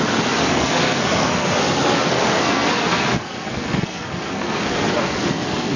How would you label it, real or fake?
fake